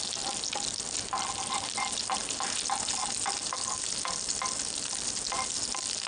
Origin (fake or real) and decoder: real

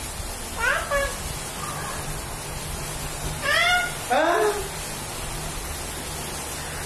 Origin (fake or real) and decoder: real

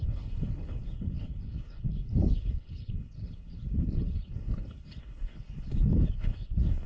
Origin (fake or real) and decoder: fake, codec, HILCodec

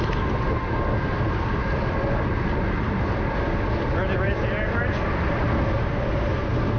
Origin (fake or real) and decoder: real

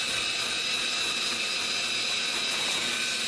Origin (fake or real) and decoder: real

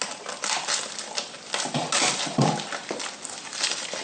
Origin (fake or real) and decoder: real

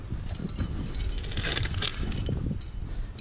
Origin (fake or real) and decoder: real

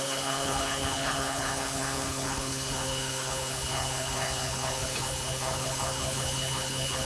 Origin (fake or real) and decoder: fake, codec, HILCodec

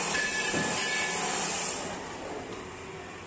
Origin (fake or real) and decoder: real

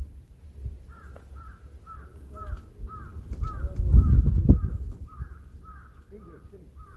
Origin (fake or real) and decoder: real